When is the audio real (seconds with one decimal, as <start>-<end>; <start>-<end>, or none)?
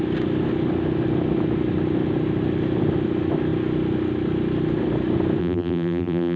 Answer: 0.0-5.4